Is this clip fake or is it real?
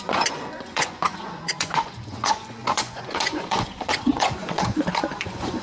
fake